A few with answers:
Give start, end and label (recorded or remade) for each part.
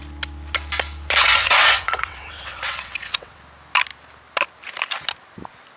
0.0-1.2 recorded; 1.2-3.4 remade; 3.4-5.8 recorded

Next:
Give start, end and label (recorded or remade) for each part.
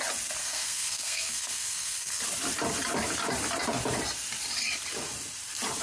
0.0-0.4 recorded; 0.4-2.2 remade; 2.2-5.8 recorded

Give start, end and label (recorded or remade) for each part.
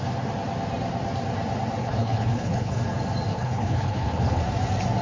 0.0-1.8 recorded; 1.8-2.8 remade; 2.8-3.3 recorded; 3.3-4.4 remade; 4.4-5.0 recorded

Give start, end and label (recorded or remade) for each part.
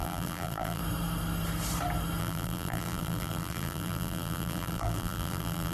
0.0-0.8 remade; 0.8-2.2 recorded; 2.2-5.7 remade